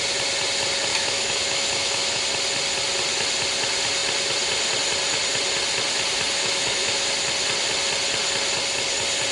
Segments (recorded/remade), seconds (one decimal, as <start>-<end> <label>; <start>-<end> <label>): 0.0-0.9 recorded; 0.9-2.2 remade; 2.2-6.4 recorded; 6.4-7.1 remade; 7.1-9.3 recorded